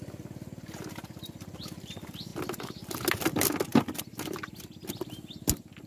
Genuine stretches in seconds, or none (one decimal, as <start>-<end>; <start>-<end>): 0.0-5.9